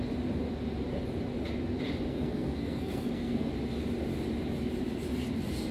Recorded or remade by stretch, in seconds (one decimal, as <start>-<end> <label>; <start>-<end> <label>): 0.0-2.1 recorded; 2.1-3.5 remade; 3.5-5.7 recorded